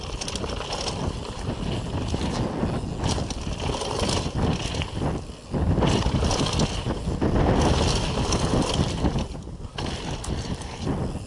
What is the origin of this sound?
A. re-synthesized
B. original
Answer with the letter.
B